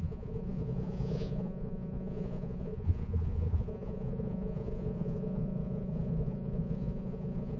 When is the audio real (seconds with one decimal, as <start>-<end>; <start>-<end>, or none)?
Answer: none